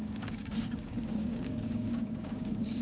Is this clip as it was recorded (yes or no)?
no